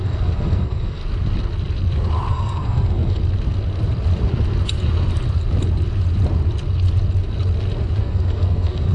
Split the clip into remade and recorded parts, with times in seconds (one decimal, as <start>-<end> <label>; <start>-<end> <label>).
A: 0.0-1.0 remade; 1.0-2.3 recorded; 2.3-3.2 remade; 3.2-8.0 recorded; 8.0-8.9 remade